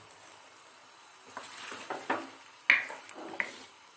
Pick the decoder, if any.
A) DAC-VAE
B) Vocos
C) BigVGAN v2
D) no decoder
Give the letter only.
D